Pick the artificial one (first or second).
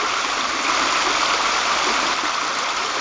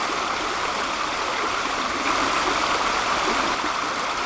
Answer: second